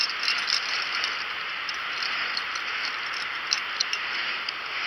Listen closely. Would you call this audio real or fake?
real